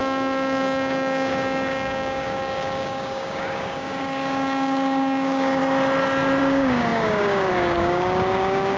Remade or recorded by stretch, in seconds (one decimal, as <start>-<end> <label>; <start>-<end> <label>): 0.0-5.6 remade; 5.6-6.4 recorded; 6.4-8.8 remade